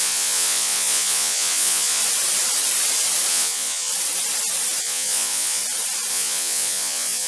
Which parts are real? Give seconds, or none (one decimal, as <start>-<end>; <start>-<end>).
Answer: 2.0-3.3; 3.9-4.8; 5.6-6.1